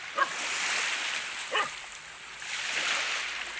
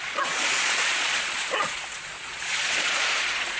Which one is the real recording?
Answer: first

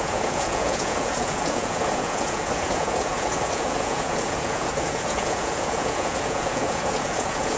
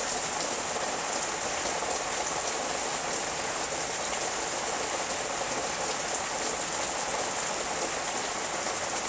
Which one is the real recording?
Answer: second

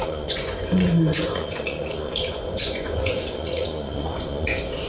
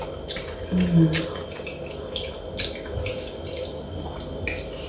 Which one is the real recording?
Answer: second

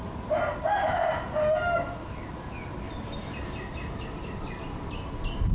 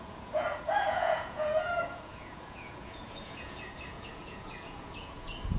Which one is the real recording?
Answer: first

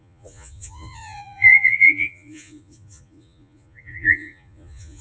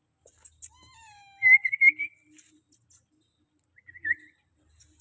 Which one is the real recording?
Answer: second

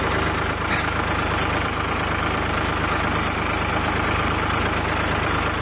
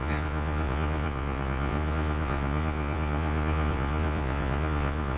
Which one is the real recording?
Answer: first